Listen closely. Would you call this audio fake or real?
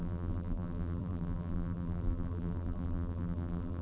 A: fake